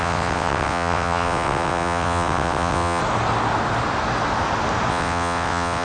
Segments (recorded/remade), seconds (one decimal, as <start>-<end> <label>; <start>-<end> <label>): 0.0-3.0 remade; 3.0-4.9 recorded; 4.9-5.8 remade